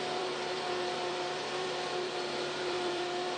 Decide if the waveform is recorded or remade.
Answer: remade